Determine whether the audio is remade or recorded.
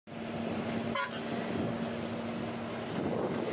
recorded